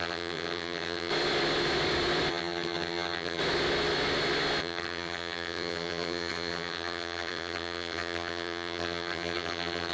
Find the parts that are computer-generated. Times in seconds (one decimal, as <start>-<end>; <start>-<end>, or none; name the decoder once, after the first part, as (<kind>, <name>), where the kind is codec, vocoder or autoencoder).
0.0-1.1 (vocoder, HiFi-GAN); 2.3-3.4; 4.6-9.9

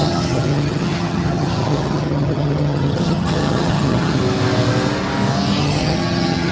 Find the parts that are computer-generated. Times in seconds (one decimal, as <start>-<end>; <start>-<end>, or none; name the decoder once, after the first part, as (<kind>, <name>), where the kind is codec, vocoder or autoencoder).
0.0-4.2 (vocoder, HiFi-GAN); 5.6-6.5

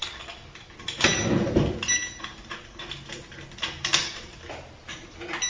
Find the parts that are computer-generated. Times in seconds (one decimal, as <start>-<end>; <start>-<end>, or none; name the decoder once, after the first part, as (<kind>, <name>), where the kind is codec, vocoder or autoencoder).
none

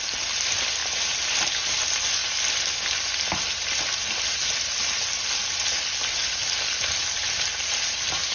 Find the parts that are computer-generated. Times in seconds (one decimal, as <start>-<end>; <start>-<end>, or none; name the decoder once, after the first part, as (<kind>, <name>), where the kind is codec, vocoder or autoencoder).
none

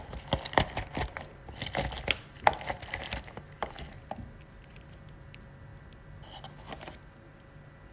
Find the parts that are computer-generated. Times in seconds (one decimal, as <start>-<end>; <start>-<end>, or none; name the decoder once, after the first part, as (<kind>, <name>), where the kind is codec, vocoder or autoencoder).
none

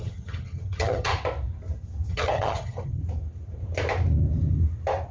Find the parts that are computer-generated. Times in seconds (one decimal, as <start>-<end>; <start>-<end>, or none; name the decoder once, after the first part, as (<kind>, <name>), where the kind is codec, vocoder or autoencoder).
0.0-1.1 (vocoder, HiFi-GAN); 2.1-3.0

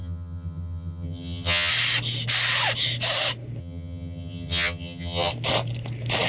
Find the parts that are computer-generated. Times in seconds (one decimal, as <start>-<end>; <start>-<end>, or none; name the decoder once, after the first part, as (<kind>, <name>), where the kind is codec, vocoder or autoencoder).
0.0-1.7 (vocoder, HiFi-GAN); 3.6-5.3